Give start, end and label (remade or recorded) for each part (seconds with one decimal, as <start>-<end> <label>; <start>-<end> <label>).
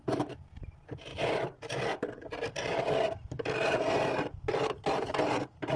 0.0-1.1 remade; 1.1-4.6 recorded; 4.6-5.8 remade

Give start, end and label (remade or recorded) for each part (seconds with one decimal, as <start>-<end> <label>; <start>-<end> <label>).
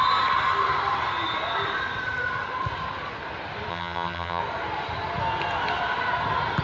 0.0-3.7 recorded; 3.7-4.4 remade; 4.4-6.6 recorded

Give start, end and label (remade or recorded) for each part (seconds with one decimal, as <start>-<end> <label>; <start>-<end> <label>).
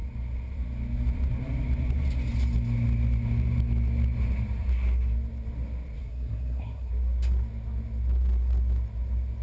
0.0-6.0 recorded; 6.0-6.9 remade; 6.9-9.4 recorded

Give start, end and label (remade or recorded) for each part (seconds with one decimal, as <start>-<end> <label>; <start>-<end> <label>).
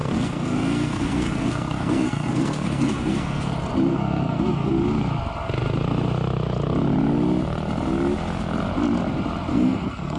0.0-3.5 remade; 3.5-3.9 recorded; 3.9-4.7 remade; 4.7-9.5 recorded; 9.5-10.2 remade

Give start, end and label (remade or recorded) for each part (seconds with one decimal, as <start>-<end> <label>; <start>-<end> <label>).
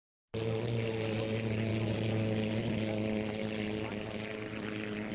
0.0-5.1 recorded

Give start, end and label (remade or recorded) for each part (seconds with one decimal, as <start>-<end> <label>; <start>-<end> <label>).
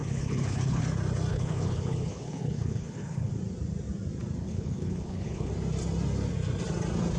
0.0-0.8 remade; 0.8-1.3 recorded; 1.3-3.3 remade; 3.3-4.4 recorded; 4.4-5.5 remade; 5.5-7.2 recorded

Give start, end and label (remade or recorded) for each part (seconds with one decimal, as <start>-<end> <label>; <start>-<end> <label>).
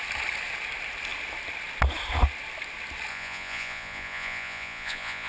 0.0-3.1 recorded; 3.1-5.3 remade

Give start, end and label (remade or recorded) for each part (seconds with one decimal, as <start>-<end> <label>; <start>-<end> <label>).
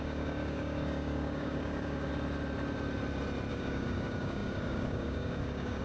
0.0-2.1 remade; 2.1-3.5 recorded; 3.5-5.8 remade